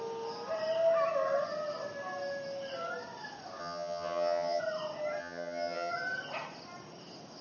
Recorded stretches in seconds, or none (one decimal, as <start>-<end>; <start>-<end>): 0.0-3.6; 4.6-5.2; 5.9-7.4